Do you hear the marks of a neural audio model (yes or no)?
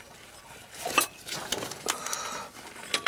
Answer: no